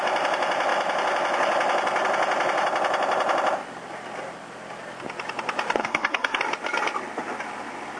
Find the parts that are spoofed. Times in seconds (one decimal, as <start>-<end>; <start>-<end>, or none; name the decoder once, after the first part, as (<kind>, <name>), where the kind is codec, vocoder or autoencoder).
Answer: 5.8-6.4 (codec, SNAC)